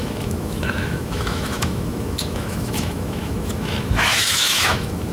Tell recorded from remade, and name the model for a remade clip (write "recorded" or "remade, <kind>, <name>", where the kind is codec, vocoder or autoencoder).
remade, autoencoder, DAC-VAE